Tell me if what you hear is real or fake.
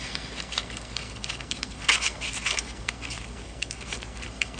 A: fake